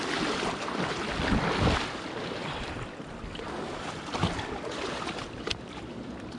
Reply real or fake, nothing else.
real